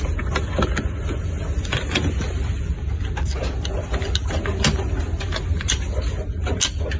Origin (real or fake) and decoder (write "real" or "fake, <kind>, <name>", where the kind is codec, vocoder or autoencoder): real